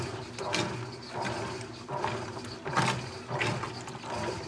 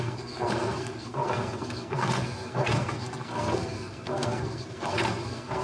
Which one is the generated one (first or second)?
second